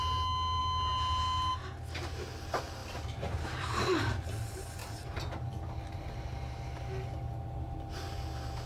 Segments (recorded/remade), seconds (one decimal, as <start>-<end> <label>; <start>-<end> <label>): 0.0-2.8 recorded; 2.8-4.0 remade; 4.0-4.8 recorded; 4.8-5.5 remade; 5.5-8.7 recorded